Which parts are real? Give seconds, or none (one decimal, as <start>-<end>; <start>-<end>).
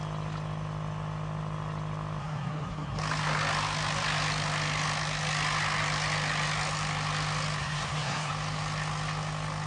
0.0-2.2; 3.0-7.6; 8.3-9.7